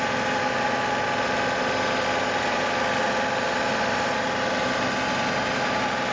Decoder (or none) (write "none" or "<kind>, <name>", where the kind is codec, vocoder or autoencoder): none